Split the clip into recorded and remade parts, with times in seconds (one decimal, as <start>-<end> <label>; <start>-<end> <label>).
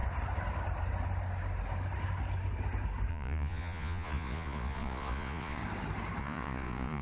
0.0-3.1 recorded; 3.1-5.6 remade; 5.6-6.2 recorded; 6.2-7.0 remade